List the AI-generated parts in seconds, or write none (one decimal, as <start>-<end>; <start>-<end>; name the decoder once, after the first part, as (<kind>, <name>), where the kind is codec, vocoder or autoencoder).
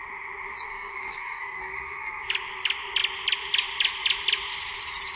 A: 0.7-2.2 (codec, SNAC)